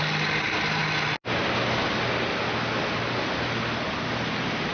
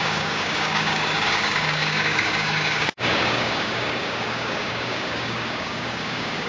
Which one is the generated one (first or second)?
second